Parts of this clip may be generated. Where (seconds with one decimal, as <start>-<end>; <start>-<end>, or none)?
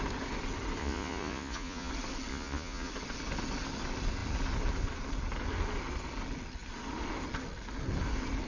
0.8-1.9; 2.3-2.9